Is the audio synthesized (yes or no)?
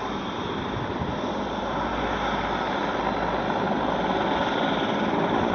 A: no